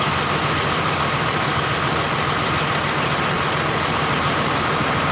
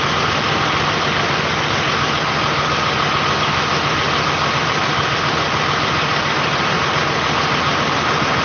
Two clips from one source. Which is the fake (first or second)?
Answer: first